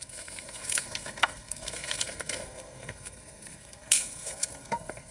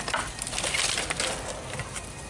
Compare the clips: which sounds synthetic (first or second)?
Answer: first